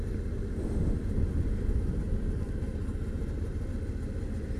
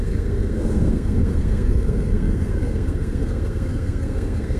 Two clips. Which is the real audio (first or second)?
first